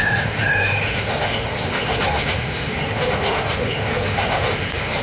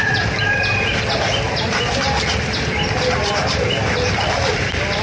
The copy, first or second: first